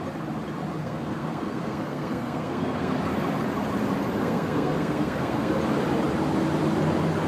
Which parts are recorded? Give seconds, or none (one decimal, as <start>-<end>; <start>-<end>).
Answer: 0.0-0.8; 2.9-4.2; 5.5-7.3